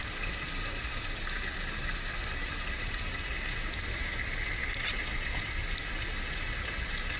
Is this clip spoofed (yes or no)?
no